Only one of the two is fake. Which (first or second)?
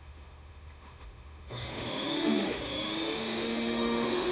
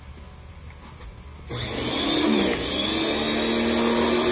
first